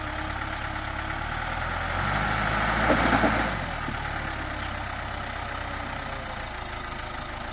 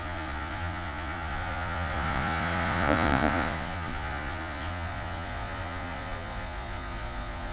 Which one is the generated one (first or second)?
second